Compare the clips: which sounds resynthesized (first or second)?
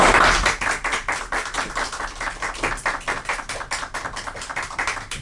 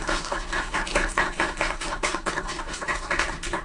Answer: second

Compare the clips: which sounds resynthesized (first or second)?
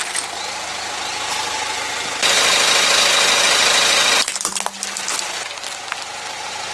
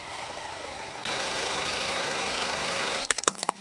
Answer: second